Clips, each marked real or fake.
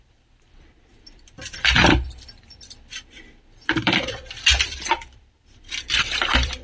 fake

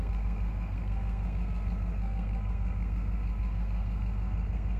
fake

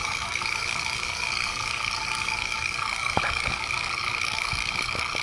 fake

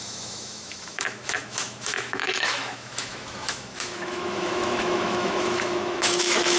fake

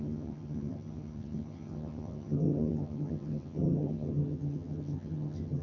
fake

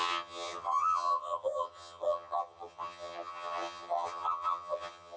fake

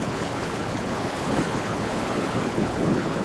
fake